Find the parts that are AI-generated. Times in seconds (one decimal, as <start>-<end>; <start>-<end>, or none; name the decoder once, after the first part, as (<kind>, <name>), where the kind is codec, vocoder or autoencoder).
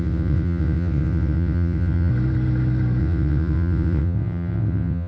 0.0-2.1 (vocoder, WaveNeXt); 3.0-5.1